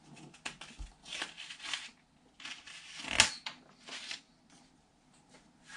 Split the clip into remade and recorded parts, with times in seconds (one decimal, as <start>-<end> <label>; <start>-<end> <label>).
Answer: 0.0-5.8 recorded